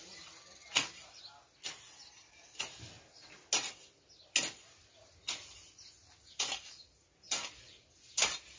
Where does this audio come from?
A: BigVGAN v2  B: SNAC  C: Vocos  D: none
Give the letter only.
D